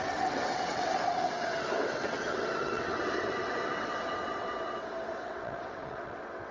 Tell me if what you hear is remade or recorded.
remade